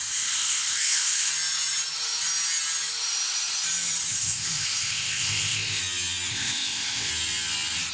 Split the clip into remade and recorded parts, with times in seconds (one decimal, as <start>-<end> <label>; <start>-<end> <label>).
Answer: 0.0-1.3 remade; 1.3-4.1 recorded; 4.1-5.8 remade; 5.8-6.3 recorded; 6.3-7.1 remade; 7.1-7.9 recorded